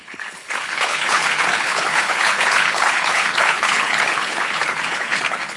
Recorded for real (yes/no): no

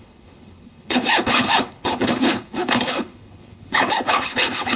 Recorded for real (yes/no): no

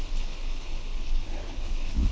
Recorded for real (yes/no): no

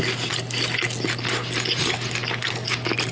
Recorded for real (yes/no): yes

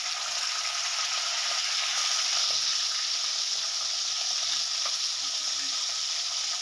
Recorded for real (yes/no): yes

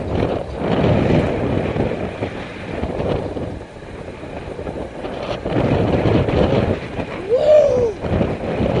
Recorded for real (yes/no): yes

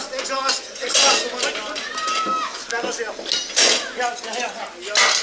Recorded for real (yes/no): yes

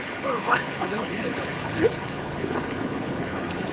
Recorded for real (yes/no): no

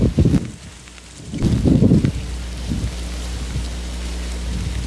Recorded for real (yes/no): yes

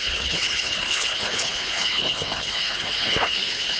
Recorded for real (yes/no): no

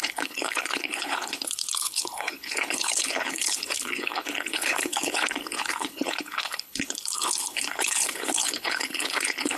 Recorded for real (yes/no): no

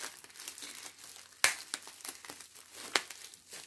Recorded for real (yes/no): yes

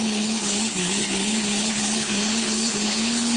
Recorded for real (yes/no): no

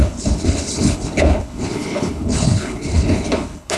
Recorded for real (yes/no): no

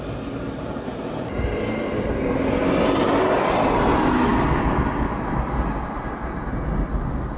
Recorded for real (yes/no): yes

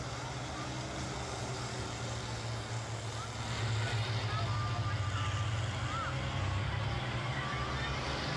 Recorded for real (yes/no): yes